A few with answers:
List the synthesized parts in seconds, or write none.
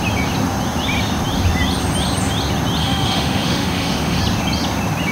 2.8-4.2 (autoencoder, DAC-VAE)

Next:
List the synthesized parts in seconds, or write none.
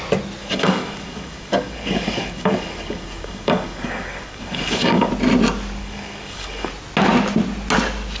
0.4-5.1 (codec, DAC); 5.8-6.7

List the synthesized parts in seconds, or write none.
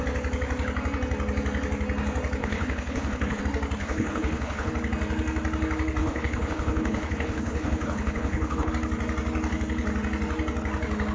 2.4-3.4 (codec, HILCodec); 3.8-4.7; 6.0-8.7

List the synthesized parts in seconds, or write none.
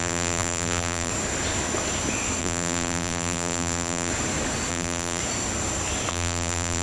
0.0-1.1 (vocoder, BigVGAN v2); 2.4-4.1; 4.7-5.2; 6.1-6.8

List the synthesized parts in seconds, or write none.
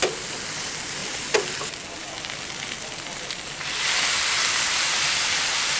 none